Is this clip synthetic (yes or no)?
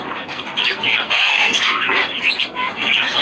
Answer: yes